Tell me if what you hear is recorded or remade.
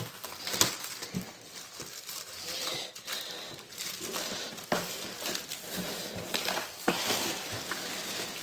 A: remade